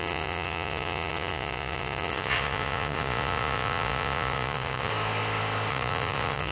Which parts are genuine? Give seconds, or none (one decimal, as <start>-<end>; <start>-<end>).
4.9-5.7